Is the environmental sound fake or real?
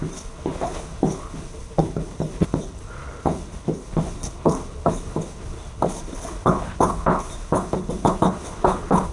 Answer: fake